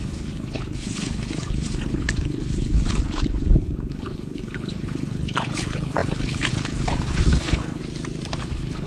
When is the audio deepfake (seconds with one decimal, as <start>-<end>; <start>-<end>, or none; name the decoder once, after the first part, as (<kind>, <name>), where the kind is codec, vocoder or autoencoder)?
0.0-7.8 (codec, HILCodec); 8.4-8.9